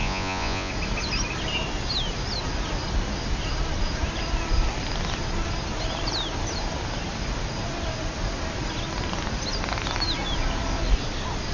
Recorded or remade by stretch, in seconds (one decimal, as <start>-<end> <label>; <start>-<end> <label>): 0.0-0.7 remade; 0.7-11.5 recorded